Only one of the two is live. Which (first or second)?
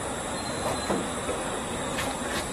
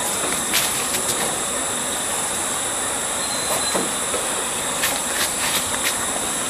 first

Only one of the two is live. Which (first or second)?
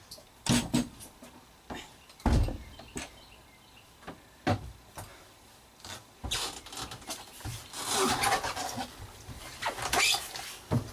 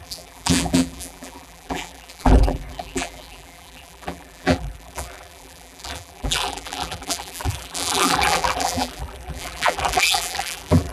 first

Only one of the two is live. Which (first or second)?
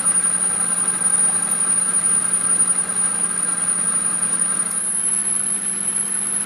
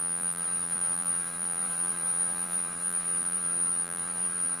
first